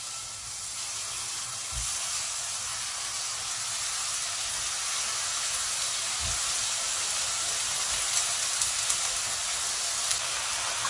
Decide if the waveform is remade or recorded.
recorded